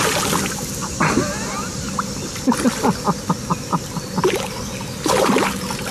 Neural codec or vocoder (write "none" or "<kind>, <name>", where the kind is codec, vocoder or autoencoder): none